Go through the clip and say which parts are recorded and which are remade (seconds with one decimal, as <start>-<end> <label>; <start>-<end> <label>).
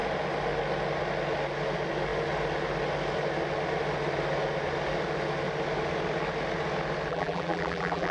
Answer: 0.0-7.1 recorded; 7.1-8.1 remade